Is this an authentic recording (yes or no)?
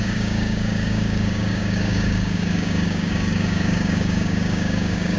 no